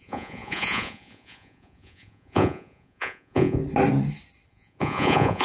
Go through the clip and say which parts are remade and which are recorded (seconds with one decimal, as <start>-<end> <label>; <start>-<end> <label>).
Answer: 0.0-3.6 remade; 3.6-4.5 recorded; 4.5-5.4 remade